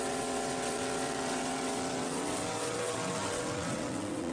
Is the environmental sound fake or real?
fake